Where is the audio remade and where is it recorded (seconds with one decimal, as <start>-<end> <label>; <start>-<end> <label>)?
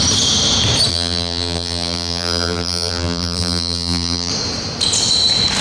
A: 0.0-0.9 recorded; 0.9-4.3 remade; 4.3-5.6 recorded